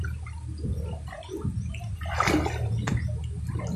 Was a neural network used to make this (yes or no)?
no